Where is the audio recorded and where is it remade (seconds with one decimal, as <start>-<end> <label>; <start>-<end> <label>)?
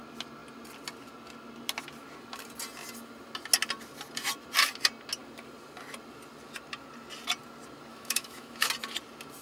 0.0-7.9 recorded; 7.9-8.7 remade; 8.7-9.4 recorded